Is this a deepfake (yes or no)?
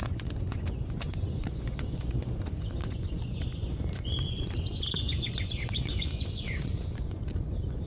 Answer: yes